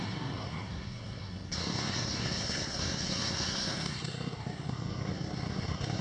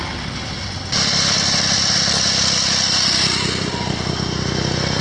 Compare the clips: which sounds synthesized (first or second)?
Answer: first